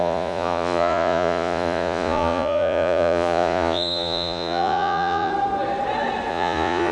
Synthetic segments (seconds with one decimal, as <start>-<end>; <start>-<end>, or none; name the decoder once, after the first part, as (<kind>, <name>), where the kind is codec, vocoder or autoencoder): 0.0-5.3 (vocoder, Vocos); 6.3-6.9

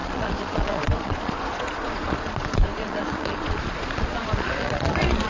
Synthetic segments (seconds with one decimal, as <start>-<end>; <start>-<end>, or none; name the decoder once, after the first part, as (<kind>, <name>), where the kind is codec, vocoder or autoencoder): 0.0-5.3 (vocoder, Vocos)

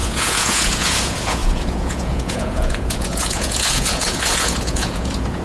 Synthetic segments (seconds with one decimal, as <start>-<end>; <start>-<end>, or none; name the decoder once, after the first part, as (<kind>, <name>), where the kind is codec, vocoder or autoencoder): 0.0-5.4 (vocoder, Vocos)

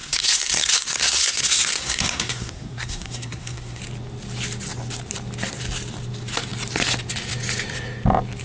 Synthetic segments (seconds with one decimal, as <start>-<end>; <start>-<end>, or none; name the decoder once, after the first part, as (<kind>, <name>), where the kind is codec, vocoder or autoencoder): 0.0-3.8 (codec, SNAC)